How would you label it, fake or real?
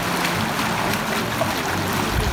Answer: real